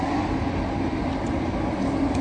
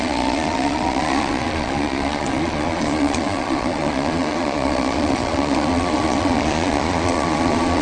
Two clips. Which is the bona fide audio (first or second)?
first